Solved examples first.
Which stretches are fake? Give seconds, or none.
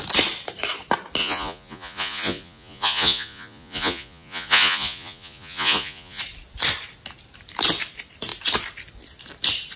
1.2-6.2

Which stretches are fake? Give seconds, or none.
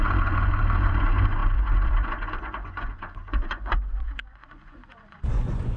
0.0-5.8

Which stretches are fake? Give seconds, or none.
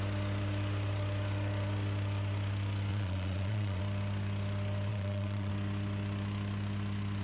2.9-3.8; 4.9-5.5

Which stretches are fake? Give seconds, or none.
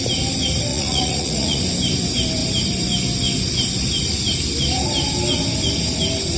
0.7-1.6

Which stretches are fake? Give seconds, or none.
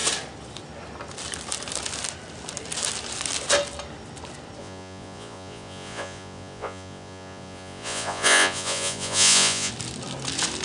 4.6-9.7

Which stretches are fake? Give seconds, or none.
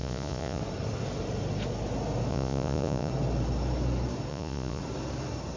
0.0-0.6; 2.3-3.1; 4.3-4.8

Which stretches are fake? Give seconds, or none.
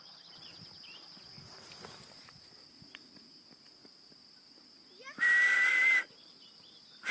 none